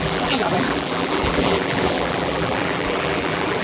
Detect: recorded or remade remade